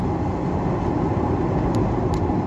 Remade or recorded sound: recorded